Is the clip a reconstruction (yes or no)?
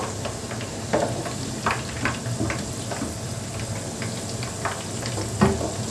no